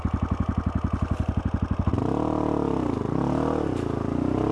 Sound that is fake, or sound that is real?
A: real